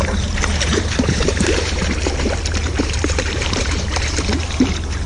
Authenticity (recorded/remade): remade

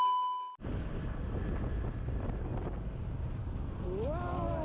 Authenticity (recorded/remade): recorded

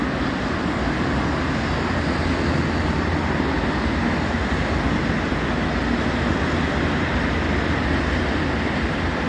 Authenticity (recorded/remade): recorded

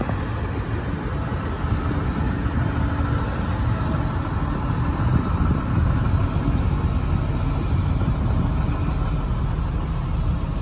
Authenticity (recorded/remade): recorded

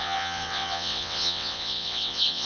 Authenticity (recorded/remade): remade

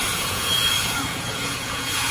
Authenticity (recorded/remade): remade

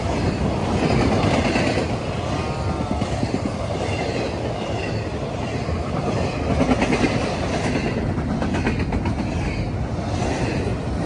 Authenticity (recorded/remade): recorded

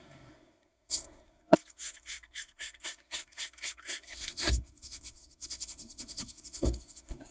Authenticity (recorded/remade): remade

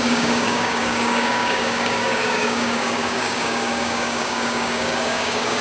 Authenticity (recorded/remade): remade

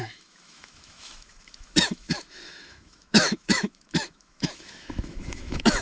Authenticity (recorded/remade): remade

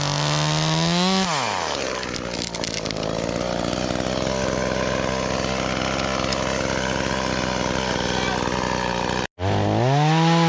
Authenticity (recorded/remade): recorded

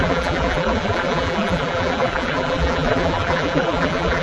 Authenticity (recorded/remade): remade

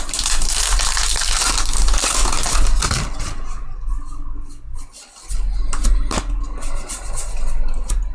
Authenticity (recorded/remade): recorded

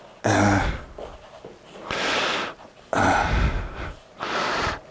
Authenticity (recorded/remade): recorded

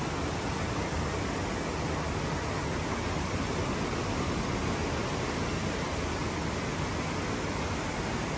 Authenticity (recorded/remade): recorded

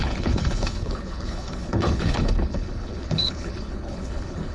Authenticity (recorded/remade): remade